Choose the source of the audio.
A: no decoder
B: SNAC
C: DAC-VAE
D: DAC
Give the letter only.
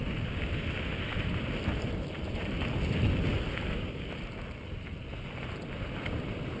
A